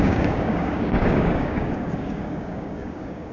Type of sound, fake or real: fake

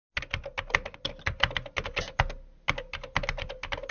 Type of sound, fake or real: real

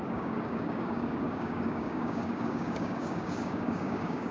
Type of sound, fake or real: fake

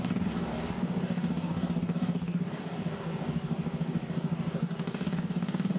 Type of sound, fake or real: fake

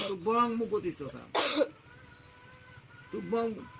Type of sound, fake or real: real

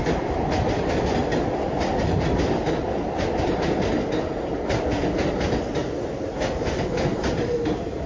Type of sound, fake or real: real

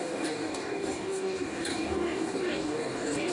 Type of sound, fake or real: fake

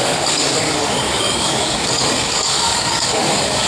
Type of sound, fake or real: fake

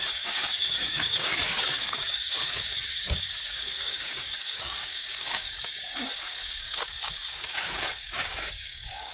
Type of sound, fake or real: fake